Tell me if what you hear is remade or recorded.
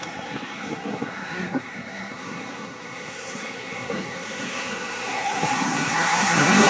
remade